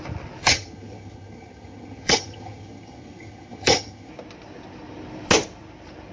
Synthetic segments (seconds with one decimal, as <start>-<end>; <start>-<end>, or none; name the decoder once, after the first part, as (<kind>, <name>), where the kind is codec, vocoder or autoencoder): 0.4-4.1 (vocoder, HiFi-GAN)